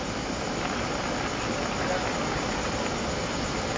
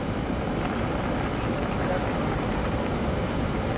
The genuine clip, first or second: first